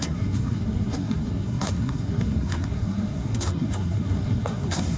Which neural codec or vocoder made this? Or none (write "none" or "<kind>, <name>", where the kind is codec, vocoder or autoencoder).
codec, SNAC